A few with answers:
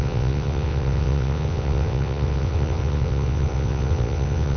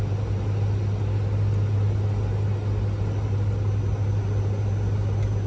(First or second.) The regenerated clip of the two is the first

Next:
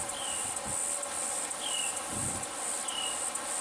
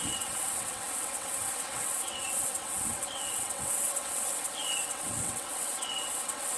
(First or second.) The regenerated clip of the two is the second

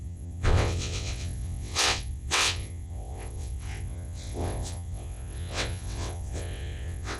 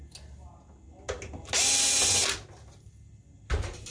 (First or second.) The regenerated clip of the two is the first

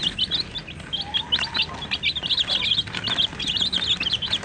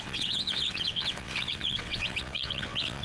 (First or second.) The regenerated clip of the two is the second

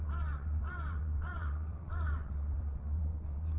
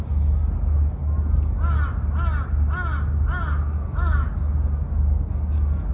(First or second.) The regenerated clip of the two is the first